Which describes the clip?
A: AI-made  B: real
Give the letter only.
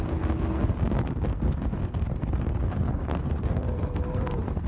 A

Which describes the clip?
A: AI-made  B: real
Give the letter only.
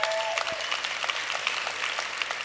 B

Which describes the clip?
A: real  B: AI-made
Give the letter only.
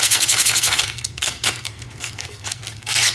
B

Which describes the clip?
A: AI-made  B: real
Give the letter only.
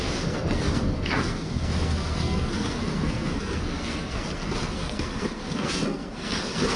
A